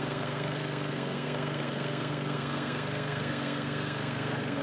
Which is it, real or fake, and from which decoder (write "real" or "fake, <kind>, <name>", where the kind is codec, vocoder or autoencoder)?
fake, codec, SNAC